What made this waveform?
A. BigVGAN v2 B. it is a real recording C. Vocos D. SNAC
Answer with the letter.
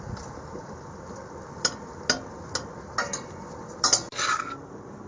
B